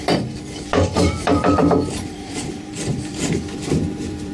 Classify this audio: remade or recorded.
remade